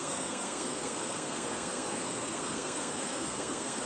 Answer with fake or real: fake